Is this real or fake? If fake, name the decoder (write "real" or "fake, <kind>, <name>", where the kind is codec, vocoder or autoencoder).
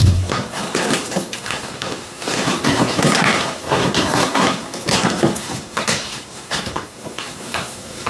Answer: fake, codec, SNAC